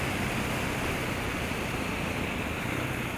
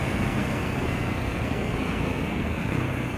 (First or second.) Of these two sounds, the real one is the first